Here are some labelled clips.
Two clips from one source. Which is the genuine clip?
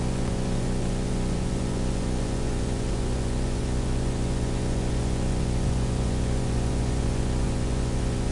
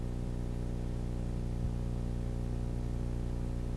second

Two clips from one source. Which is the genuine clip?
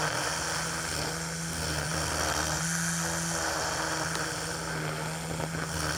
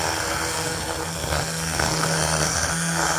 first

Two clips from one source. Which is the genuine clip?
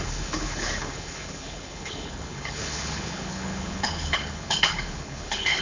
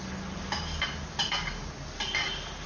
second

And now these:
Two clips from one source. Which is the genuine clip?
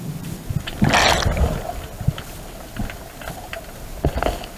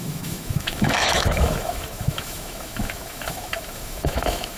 first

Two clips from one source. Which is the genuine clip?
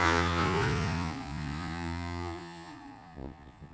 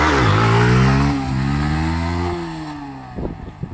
second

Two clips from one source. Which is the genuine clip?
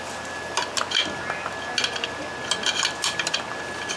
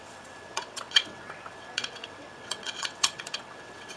first